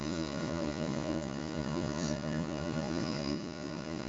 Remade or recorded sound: remade